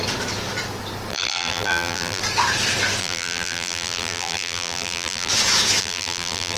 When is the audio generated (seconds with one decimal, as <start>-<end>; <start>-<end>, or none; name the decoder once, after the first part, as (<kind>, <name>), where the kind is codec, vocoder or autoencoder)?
1.1-2.2 (vocoder, BigVGAN v2); 3.0-5.3; 5.8-6.6